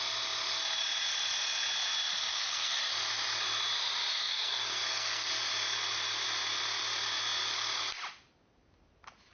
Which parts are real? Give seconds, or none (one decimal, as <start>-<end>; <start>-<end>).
0.0-2.3; 2.8-4.1; 5.3-9.3